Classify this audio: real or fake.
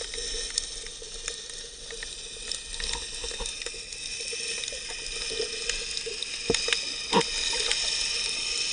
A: real